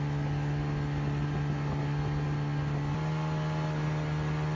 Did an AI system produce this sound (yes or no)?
no